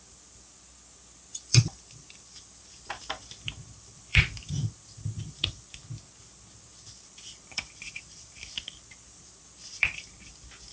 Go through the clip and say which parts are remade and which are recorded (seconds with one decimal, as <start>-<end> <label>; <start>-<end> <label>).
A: 0.0-1.3 recorded; 1.3-5.7 remade; 5.7-6.7 recorded; 6.7-10.1 remade; 10.1-10.7 recorded